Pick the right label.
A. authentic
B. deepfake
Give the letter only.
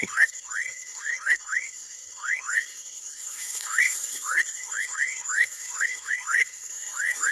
B